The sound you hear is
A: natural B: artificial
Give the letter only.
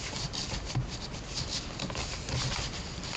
A